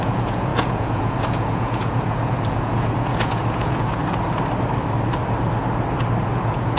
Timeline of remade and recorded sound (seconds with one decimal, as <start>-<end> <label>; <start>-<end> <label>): 0.0-4.0 remade; 4.0-6.2 recorded; 6.2-6.8 remade